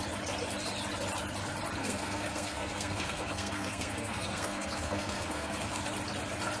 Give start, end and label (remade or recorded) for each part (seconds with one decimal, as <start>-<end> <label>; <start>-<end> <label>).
0.0-1.8 recorded; 1.8-5.8 remade; 5.8-6.6 recorded